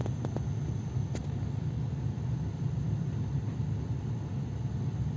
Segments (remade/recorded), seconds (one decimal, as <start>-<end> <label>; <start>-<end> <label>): 0.0-5.2 recorded